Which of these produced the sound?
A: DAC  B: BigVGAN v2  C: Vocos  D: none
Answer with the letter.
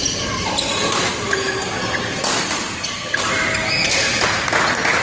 D